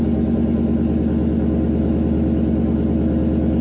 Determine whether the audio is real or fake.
real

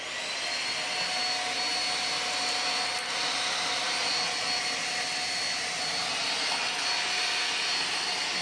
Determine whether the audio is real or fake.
real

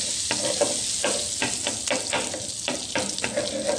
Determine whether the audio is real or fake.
real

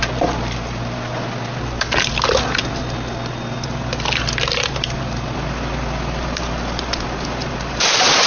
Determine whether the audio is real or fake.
real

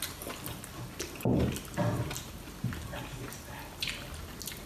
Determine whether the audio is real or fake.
real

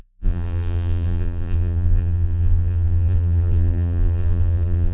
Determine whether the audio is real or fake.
fake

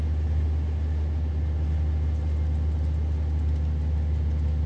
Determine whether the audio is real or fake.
real